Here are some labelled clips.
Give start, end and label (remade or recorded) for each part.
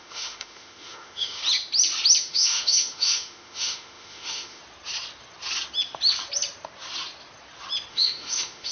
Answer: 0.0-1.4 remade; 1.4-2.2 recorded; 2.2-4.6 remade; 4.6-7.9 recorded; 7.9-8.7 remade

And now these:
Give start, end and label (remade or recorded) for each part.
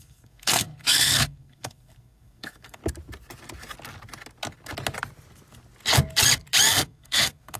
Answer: 0.0-2.8 remade; 2.8-6.7 recorded; 6.7-7.6 remade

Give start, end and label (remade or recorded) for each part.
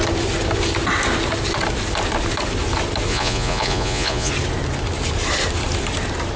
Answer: 0.0-3.1 recorded; 3.1-4.3 remade; 4.3-6.4 recorded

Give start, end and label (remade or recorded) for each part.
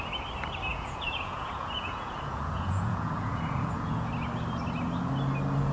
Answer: 0.0-0.7 recorded; 0.7-4.1 remade; 4.1-5.7 recorded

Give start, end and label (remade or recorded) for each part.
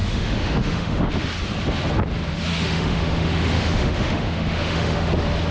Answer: 0.0-1.1 remade; 1.1-2.5 recorded; 2.5-5.1 remade; 5.1-5.5 recorded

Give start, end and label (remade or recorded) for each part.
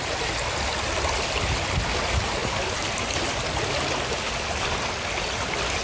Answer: 0.0-5.8 recorded